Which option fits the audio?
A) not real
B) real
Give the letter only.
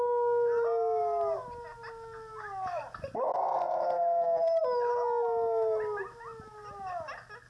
B